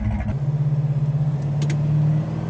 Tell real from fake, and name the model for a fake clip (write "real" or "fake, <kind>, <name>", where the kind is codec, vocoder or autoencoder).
real